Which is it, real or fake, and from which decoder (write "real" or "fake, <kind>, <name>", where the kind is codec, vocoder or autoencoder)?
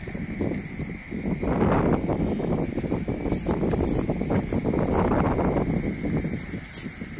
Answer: real